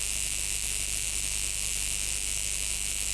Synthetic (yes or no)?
yes